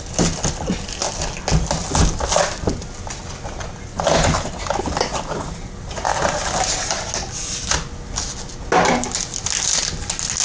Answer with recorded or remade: recorded